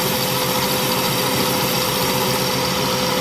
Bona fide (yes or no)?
yes